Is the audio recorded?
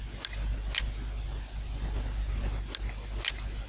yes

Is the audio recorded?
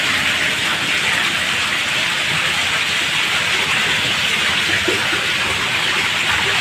yes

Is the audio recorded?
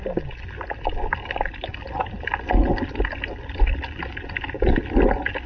yes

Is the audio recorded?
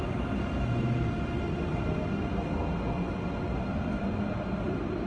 yes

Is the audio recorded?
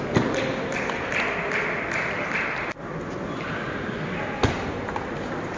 yes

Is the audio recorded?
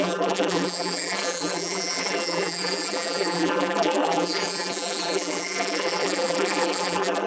no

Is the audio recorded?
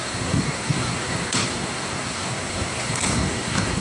no